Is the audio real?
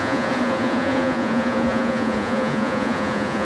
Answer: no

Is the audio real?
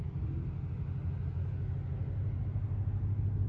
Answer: yes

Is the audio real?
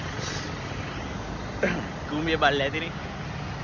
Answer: yes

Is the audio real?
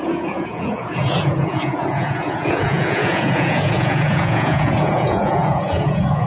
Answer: no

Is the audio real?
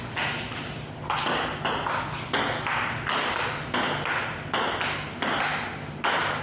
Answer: yes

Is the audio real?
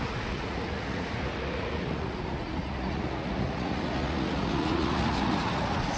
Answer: no